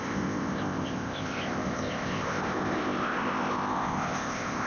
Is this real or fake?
fake